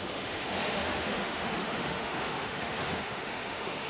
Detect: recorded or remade remade